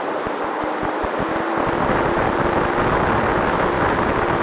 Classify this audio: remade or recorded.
recorded